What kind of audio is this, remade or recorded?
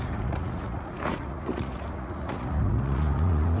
remade